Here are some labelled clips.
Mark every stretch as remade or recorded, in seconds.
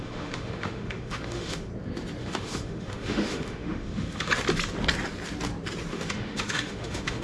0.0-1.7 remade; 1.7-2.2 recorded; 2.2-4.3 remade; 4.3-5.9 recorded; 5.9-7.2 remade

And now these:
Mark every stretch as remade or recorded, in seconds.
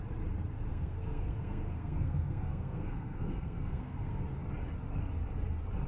0.0-0.7 recorded; 0.7-4.2 remade; 4.2-5.9 recorded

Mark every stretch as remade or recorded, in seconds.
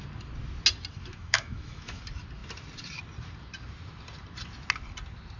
0.0-1.1 recorded; 1.1-2.0 remade; 2.0-5.4 recorded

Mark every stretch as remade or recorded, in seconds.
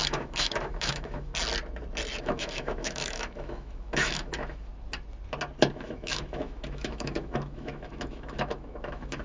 0.0-1.3 remade; 1.3-2.2 recorded; 2.2-4.7 remade; 4.7-5.7 recorded; 5.7-9.2 remade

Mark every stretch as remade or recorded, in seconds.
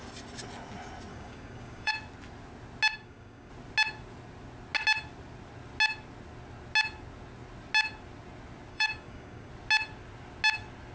0.0-1.1 recorded; 1.1-1.9 remade; 1.9-2.9 recorded; 2.9-3.5 remade; 3.5-8.7 recorded; 8.7-9.5 remade; 9.5-10.9 recorded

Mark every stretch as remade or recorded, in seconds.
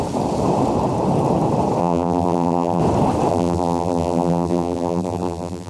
0.0-1.8 recorded; 1.8-2.8 remade; 2.8-3.3 recorded; 3.3-5.7 remade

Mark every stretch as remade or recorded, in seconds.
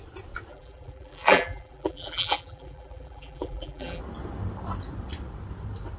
0.0-0.5 recorded; 0.5-4.0 remade; 4.0-6.0 recorded